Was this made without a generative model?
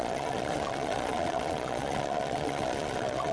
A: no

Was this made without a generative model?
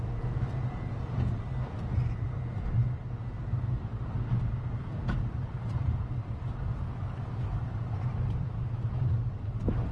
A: yes